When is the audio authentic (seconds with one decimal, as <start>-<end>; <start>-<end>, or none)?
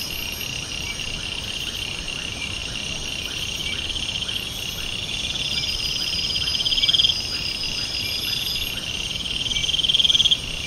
0.0-10.7